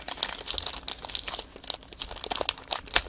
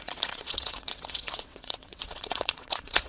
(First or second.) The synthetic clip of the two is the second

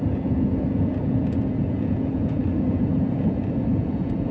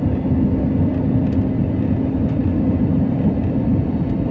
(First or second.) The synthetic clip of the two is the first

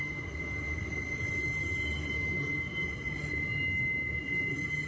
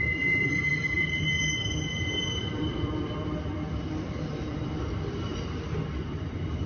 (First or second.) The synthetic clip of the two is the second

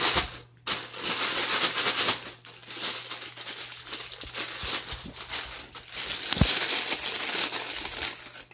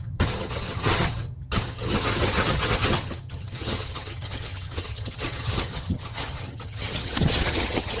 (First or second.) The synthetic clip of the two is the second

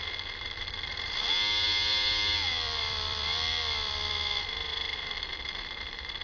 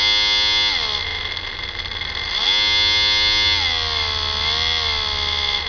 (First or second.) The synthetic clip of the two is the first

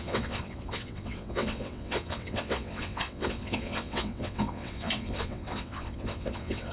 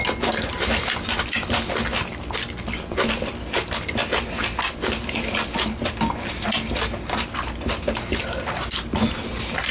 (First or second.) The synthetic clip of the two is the first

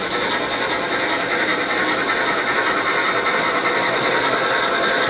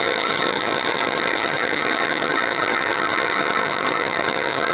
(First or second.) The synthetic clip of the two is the second